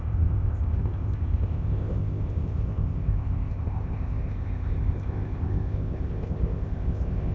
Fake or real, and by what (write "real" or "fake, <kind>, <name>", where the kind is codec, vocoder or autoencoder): fake, codec, ZipCodec